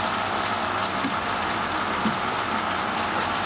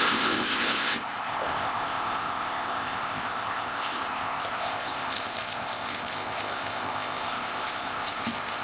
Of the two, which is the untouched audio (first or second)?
first